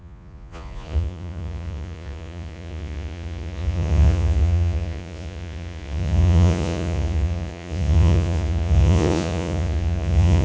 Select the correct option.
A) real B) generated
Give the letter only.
B